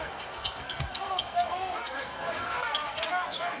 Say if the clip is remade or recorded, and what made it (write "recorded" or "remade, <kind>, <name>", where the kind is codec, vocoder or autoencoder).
remade, codec, SNAC